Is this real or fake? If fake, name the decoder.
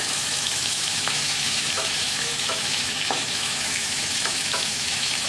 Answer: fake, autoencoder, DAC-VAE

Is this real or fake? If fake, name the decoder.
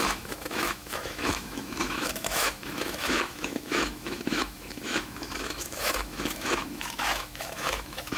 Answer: fake, autoencoder, DAC-VAE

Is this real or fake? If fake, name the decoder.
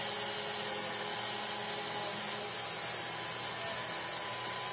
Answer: real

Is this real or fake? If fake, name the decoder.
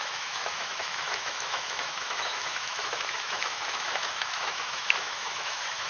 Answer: fake, autoencoder, DAC-VAE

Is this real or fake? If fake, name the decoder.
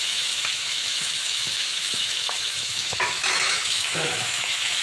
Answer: fake, autoencoder, DAC-VAE